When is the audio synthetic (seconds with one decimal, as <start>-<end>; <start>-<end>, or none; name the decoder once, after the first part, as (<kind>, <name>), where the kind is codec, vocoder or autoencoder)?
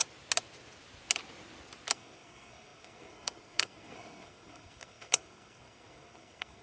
1.9-6.6 (codec, SNAC)